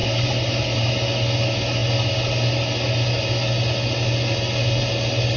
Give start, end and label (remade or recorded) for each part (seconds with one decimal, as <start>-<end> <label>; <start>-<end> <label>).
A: 0.0-0.9 remade; 0.9-5.4 recorded